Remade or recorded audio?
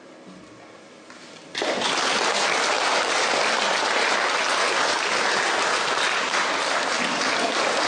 recorded